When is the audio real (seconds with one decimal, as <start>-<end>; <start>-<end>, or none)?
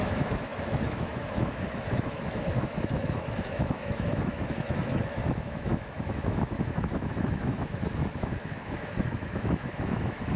none